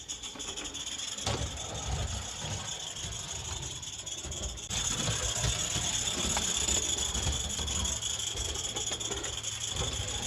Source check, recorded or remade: remade